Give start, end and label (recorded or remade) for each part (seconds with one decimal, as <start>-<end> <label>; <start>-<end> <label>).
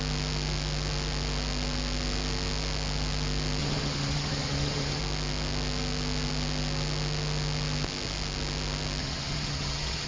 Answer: 0.0-3.6 recorded; 3.6-5.0 remade; 5.0-9.0 recorded; 9.0-10.1 remade